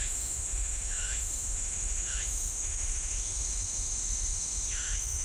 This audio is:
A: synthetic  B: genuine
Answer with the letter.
A